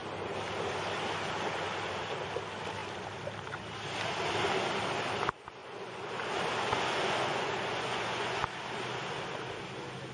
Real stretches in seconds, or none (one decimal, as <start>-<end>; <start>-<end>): 0.0-5.6; 6.1-6.7; 8.4-10.1